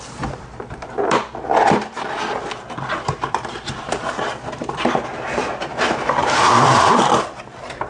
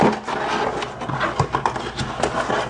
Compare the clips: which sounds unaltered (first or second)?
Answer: second